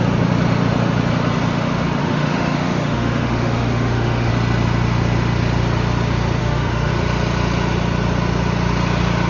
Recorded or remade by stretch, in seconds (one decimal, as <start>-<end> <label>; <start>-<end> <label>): 0.0-2.0 recorded; 2.0-4.3 remade; 4.3-6.4 recorded; 6.4-6.9 remade; 6.9-9.3 recorded